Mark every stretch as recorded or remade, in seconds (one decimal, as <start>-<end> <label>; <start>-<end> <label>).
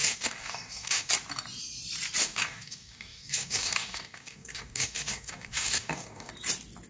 0.0-1.1 remade; 1.1-2.2 recorded; 2.2-6.3 remade; 6.3-6.9 recorded